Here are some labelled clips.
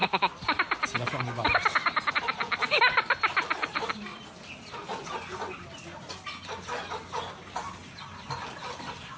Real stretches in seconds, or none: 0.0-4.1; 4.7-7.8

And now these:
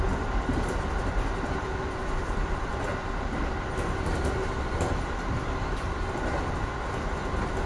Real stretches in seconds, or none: 0.0-7.7

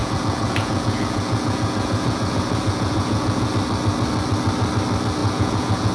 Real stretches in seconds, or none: 3.5-5.2

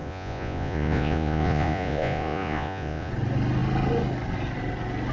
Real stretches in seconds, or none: 3.1-5.1

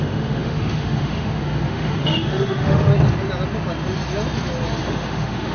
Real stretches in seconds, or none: 2.9-4.8

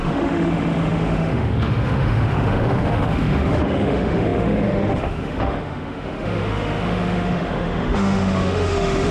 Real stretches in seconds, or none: none